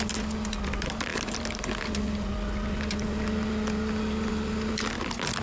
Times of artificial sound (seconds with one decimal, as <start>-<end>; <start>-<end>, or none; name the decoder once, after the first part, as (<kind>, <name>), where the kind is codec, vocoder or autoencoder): none